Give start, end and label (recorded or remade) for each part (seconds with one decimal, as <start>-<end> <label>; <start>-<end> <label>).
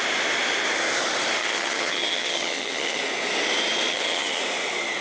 0.0-1.4 recorded; 1.4-3.0 remade; 3.0-3.9 recorded; 3.9-4.4 remade; 4.4-5.0 recorded